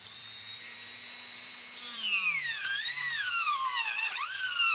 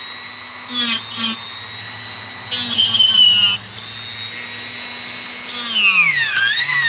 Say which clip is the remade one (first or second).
first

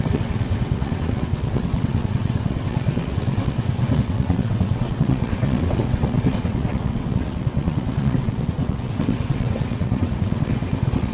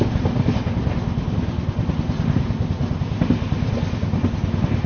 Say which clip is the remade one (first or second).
first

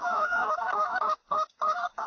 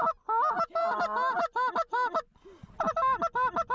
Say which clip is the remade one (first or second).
first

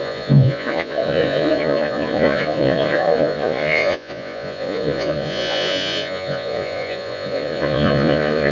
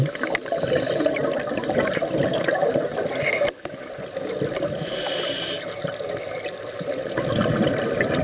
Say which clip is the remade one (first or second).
first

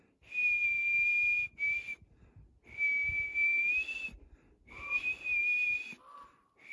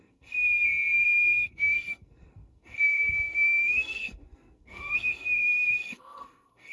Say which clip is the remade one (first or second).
second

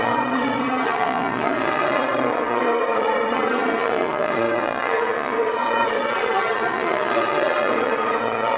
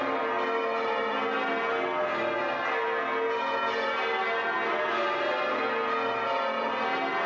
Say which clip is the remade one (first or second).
first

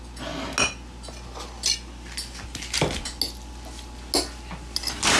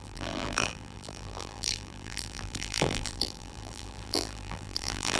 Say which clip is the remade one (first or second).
second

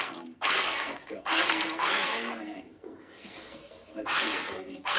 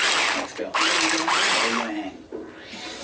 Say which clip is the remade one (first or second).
first